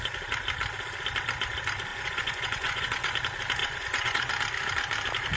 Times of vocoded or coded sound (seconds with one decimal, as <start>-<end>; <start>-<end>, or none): 1.9-3.1; 3.6-4.3